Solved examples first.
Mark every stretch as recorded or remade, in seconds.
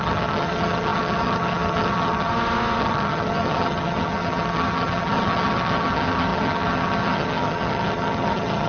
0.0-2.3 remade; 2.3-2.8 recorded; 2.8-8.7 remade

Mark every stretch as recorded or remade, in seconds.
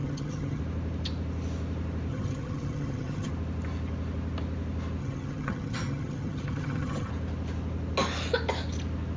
0.0-0.6 remade; 0.6-2.1 recorded; 2.1-3.3 remade; 3.3-5.0 recorded; 5.0-7.1 remade; 7.1-9.2 recorded